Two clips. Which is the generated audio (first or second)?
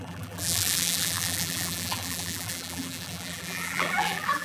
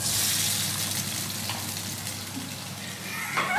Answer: first